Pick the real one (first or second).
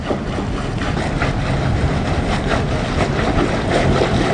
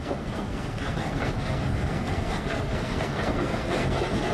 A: first